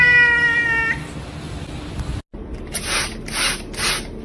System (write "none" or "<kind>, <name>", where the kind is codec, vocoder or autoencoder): none